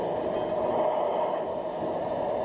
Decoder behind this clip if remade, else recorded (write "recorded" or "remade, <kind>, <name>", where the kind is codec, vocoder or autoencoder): recorded